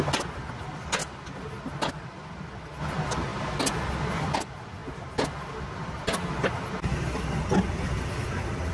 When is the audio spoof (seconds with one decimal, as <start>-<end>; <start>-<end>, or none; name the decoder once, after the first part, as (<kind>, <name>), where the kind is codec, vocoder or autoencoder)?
none